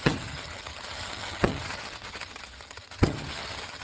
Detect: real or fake fake